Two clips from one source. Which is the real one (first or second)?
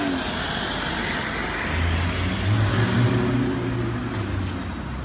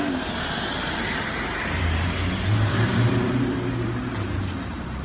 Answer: first